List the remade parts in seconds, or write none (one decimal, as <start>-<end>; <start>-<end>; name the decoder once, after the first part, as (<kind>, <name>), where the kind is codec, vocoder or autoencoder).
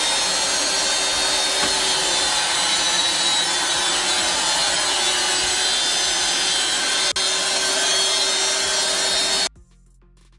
none